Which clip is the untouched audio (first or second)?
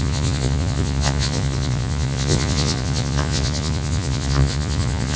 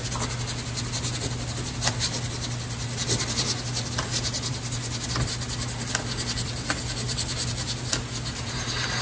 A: second